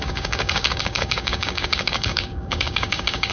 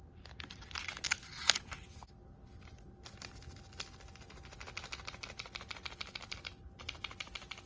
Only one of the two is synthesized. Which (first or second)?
first